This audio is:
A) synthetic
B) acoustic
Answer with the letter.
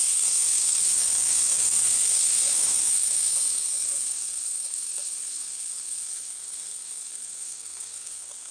A